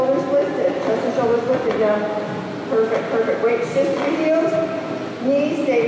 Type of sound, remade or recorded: recorded